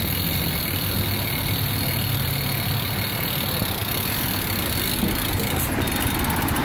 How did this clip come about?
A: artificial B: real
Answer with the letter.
B